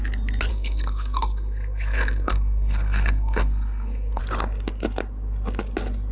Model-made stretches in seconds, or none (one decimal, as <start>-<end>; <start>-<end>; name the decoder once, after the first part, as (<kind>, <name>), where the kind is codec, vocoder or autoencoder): 0.5-4.2 (codec, SNAC)